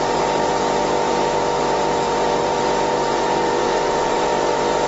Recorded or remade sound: remade